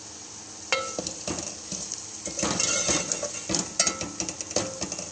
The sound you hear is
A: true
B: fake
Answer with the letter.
A